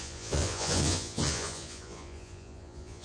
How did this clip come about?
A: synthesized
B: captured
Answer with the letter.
A